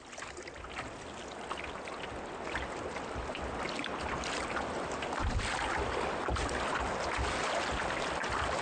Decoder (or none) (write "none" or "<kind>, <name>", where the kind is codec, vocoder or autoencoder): none